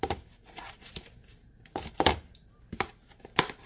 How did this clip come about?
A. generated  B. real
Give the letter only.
A